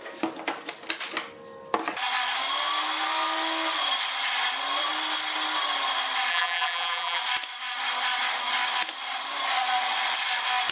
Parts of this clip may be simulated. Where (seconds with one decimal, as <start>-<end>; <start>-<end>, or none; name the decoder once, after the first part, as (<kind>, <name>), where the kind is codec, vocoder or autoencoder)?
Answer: 6.3-7.2 (vocoder, BigVGAN v2)